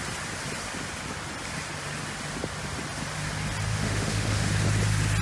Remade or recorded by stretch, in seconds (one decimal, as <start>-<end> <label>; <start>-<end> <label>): 0.0-3.7 recorded; 3.7-4.5 remade; 4.5-5.2 recorded